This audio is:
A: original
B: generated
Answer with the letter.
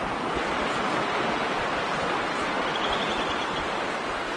A